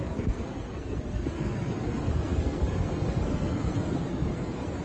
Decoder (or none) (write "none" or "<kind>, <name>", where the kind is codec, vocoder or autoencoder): codec, SNAC